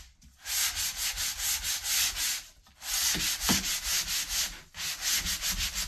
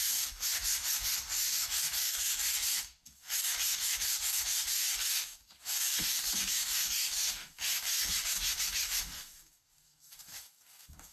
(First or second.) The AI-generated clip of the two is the second